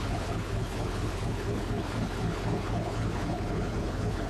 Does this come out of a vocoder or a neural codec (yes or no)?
yes